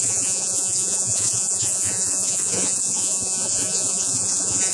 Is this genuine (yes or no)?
no